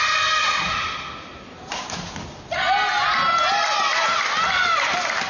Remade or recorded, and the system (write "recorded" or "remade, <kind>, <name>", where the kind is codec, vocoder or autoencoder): recorded